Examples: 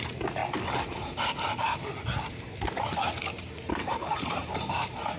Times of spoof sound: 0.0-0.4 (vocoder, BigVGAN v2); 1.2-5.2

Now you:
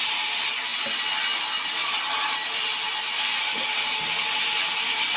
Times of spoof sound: none

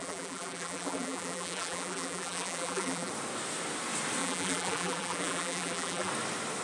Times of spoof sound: 0.0-3.1 (vocoder, BigVGAN v2); 4.2-6.1